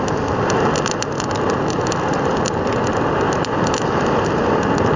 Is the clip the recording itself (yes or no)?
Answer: yes